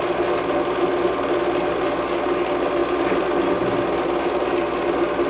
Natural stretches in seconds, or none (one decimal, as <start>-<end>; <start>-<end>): 0.0-5.3